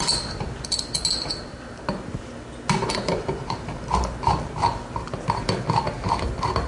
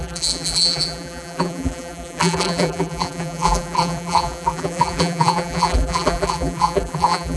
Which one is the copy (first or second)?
second